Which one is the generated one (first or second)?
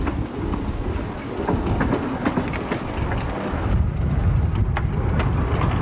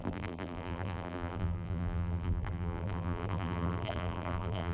second